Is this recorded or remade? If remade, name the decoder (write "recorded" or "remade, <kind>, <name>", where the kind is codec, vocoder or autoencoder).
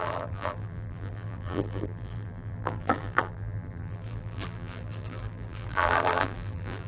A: remade, vocoder, BigVGAN v2